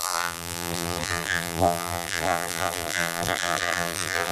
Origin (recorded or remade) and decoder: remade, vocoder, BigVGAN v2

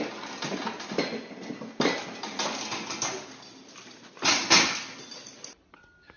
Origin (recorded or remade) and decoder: recorded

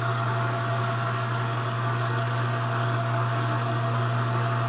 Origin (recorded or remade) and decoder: remade, codec, DAC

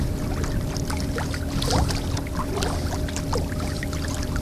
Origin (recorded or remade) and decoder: recorded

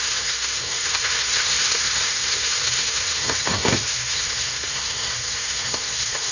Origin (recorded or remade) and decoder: remade, codec, SNAC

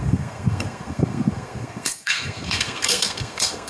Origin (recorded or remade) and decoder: remade, codec, SNAC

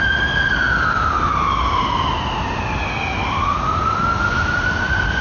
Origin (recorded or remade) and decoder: recorded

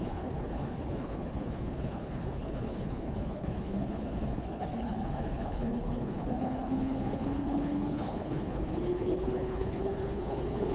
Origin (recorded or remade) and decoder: remade, codec, HILCodec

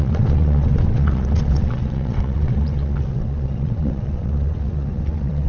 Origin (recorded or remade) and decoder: remade, vocoder, WaveNeXt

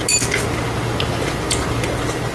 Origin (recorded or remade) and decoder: recorded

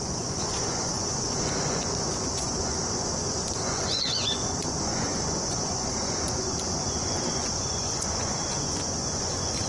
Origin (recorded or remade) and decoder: remade, vocoder, Vocos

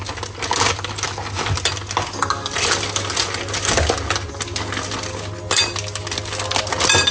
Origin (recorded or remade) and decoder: recorded